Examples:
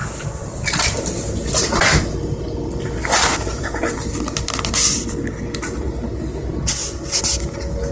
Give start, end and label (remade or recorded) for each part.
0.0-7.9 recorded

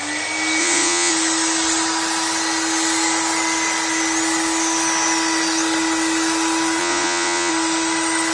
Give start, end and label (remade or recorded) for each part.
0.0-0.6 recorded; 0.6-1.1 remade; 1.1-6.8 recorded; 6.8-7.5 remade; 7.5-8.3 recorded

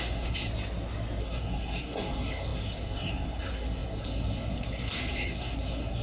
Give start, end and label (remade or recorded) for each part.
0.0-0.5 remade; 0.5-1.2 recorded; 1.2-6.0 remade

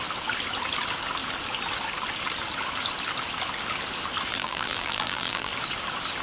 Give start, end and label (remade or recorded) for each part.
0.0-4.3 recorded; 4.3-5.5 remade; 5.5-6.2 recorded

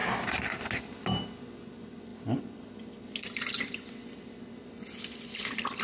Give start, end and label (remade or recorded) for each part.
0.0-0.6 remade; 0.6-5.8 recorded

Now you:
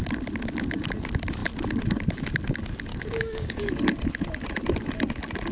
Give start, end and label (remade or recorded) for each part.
0.0-2.9 recorded; 2.9-3.7 remade; 3.7-5.5 recorded

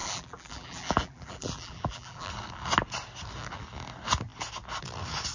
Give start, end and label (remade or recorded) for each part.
0.0-2.3 remade; 2.3-5.3 recorded

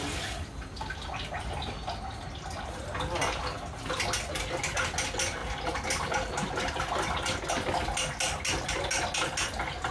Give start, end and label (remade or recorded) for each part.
0.0-9.9 recorded